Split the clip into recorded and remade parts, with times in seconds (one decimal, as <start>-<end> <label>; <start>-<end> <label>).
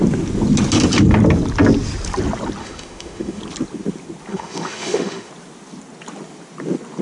0.0-2.6 recorded; 2.6-3.4 remade; 3.4-4.3 recorded; 4.3-5.3 remade; 5.3-7.0 recorded